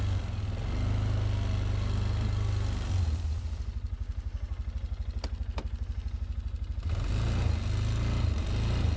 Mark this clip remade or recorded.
recorded